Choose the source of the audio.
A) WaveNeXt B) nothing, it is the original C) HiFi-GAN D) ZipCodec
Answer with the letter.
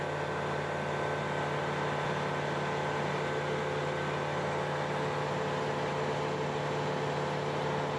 B